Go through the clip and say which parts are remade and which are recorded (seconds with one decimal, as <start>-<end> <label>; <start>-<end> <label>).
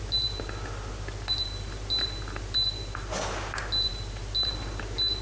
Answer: 0.0-5.2 recorded